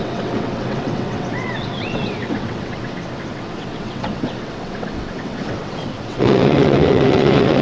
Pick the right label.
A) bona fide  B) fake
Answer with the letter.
B